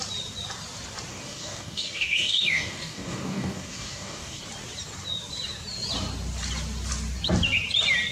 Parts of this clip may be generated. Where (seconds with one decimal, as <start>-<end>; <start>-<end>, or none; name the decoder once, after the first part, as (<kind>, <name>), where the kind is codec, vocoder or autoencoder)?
1.1-4.4 (codec, DAC)

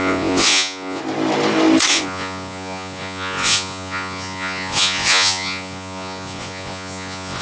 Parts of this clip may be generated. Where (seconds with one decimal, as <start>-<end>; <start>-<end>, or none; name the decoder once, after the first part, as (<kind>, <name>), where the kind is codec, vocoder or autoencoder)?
0.0-1.0 (vocoder, Vocos); 1.9-7.4

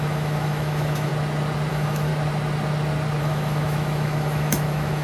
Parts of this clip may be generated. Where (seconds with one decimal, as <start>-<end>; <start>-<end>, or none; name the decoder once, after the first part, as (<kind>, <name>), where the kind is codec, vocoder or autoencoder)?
0.0-1.1 (autoencoder, DAC-VAE); 1.7-2.1; 3.2-5.0

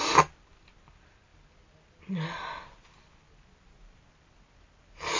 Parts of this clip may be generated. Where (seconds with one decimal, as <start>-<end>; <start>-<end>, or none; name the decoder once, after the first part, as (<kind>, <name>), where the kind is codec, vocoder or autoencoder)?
none

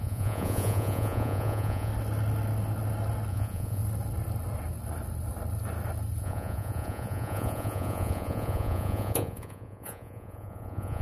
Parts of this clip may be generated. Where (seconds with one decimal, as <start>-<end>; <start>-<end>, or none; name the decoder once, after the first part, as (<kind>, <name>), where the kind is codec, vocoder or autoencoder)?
0.0-1.9 (vocoder, Vocos); 3.3-3.8; 6.2-11.0

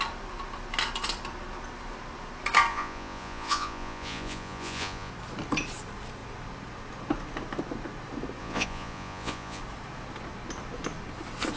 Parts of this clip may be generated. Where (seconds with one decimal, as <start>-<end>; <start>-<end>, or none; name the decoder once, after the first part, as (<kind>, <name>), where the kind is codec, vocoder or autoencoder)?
2.7-5.1 (vocoder, Vocos); 8.4-9.6

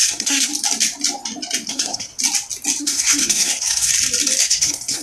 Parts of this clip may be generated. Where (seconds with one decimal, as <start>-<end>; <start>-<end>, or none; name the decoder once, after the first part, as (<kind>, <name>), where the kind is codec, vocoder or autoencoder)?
0.0-0.5 (codec, SNAC); 1.7-2.1; 2.8-3.9; 4.4-5.0